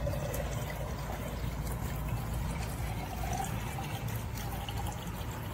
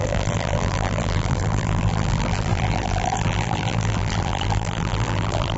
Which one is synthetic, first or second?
second